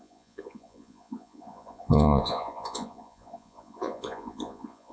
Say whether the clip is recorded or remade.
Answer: remade